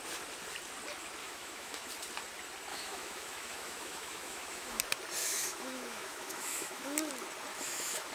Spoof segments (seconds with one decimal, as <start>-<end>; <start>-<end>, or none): 1.2-1.9; 2.7-4.8; 5.2-7.1; 7.5-8.1